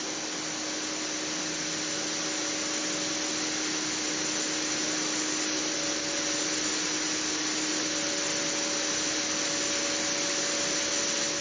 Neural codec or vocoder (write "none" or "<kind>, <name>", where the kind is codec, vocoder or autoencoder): none